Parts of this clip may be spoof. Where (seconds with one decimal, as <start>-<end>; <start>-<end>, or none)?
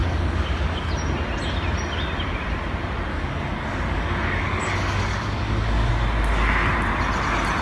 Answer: 0.0-0.9; 3.1-5.9